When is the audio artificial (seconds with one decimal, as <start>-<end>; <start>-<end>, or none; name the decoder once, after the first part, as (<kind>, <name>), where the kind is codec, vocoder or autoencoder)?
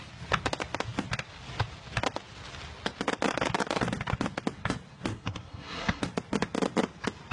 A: 5.1-6.0 (codec, SNAC)